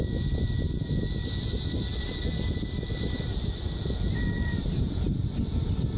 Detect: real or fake real